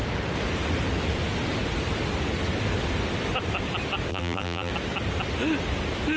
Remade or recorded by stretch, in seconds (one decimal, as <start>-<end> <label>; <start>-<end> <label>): 0.0-4.1 recorded; 4.1-4.7 remade; 4.7-6.2 recorded